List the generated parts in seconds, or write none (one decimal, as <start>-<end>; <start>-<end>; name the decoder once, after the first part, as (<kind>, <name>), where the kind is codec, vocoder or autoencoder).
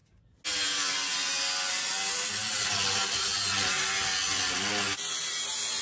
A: none